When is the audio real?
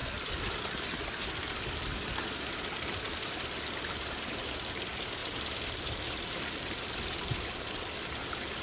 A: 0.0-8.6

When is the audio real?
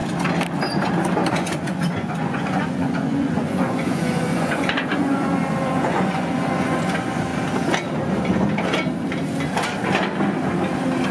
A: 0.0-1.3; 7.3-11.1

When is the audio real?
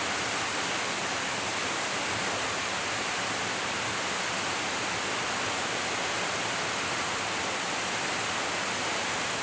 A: 0.0-9.4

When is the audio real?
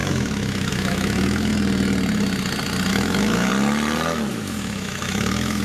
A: 1.5-2.9; 3.5-4.3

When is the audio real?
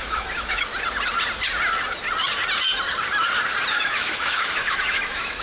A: 0.7-3.7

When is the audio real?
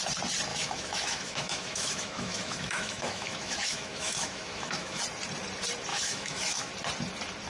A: 0.0-0.5; 5.0-5.9; 6.7-7.5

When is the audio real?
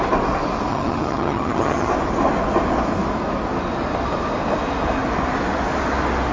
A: 0.0-0.7; 1.9-6.3